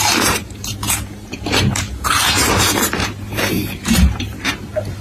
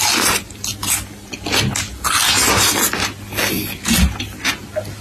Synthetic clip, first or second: first